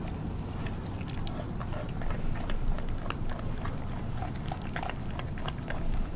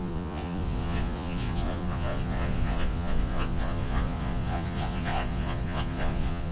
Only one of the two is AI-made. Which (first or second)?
second